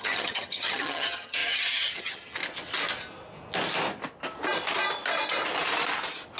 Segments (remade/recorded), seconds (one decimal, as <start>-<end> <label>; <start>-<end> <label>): 0.0-2.4 remade; 2.4-6.4 recorded